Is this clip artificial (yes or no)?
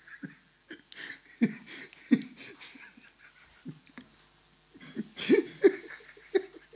no